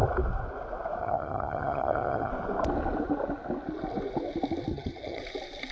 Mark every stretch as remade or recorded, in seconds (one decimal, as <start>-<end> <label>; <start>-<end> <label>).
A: 0.0-1.0 recorded; 1.0-2.3 remade; 2.3-4.7 recorded; 4.7-5.2 remade; 5.2-5.7 recorded